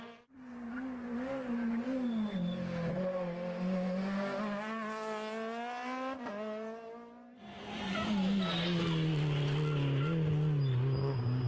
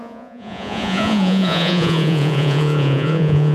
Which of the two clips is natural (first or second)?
first